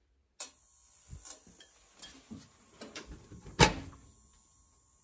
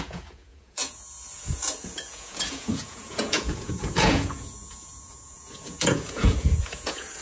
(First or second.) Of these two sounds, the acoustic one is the first